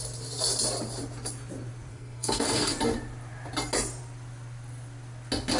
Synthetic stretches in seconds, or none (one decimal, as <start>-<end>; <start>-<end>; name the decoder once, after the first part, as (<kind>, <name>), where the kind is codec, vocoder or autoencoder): 1.9-2.8 (codec, SNAC)